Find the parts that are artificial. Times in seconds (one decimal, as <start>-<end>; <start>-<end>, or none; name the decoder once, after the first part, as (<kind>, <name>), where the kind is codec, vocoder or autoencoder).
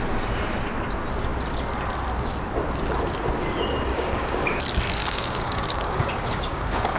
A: 3.9-4.6 (codec, DAC); 5.0-7.0